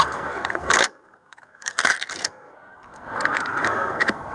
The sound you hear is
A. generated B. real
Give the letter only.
A